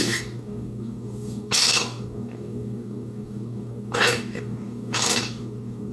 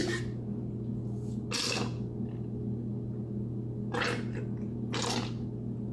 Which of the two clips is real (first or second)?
second